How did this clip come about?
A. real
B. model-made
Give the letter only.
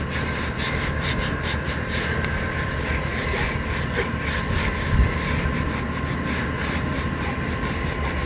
A